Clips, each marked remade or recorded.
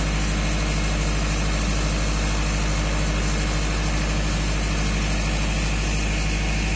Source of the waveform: recorded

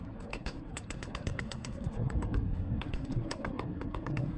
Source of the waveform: remade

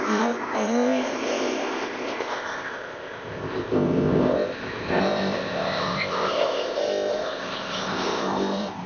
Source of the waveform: remade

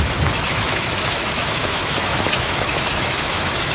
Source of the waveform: remade